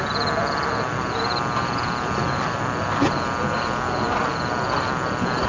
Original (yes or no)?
yes